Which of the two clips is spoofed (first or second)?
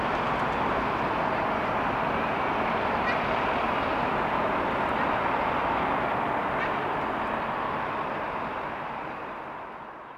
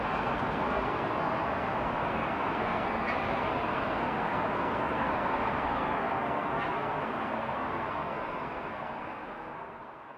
second